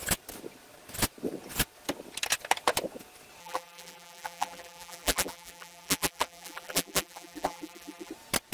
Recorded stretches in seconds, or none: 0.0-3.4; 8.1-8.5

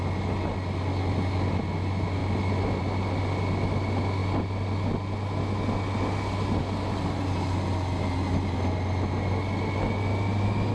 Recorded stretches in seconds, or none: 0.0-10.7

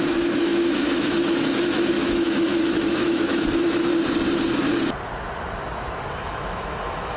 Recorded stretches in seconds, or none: 3.9-6.1